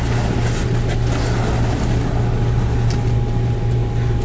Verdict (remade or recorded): recorded